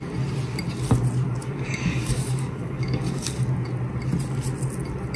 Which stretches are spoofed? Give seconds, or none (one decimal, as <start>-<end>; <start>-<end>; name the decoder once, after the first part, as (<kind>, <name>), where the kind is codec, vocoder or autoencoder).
1.4-3.4 (codec, DAC)